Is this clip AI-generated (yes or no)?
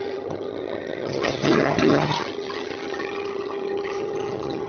yes